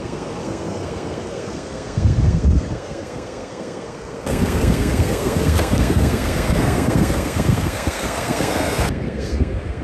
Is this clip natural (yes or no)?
no